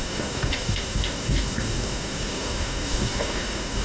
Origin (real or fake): fake